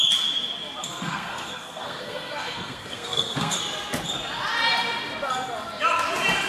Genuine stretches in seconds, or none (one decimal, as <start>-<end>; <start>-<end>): 0.0-0.8; 3.6-6.5